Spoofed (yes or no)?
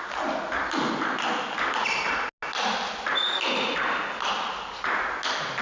no